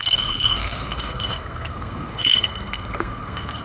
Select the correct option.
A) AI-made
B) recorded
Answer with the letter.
A